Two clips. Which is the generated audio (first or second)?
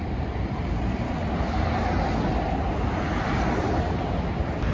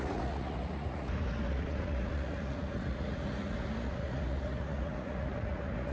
second